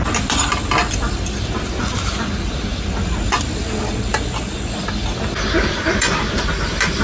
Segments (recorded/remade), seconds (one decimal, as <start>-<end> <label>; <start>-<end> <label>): 0.0-7.0 recorded